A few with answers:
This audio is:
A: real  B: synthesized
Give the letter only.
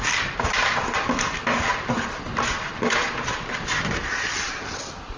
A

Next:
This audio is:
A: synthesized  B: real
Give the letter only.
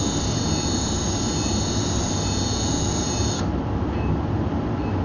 B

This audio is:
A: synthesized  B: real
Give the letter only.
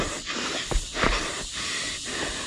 B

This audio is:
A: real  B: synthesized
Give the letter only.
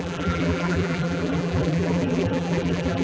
B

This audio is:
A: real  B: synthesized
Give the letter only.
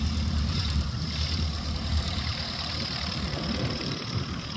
B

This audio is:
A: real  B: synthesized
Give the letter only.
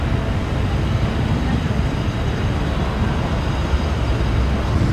A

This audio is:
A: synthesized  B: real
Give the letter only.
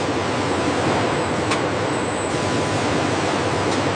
B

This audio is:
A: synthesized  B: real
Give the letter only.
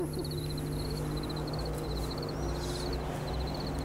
B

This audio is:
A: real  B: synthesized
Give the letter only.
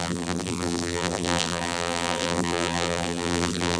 B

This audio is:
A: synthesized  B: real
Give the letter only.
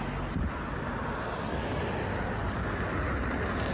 B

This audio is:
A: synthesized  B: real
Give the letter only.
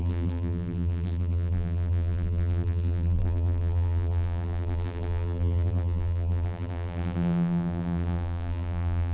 A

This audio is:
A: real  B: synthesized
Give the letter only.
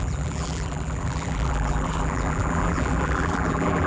B